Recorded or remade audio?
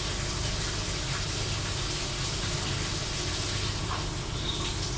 recorded